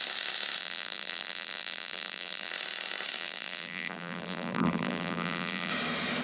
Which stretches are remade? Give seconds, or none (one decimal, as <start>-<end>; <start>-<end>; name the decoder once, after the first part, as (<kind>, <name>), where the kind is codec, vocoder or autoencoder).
0.6-2.5 (vocoder, BigVGAN v2); 3.2-5.7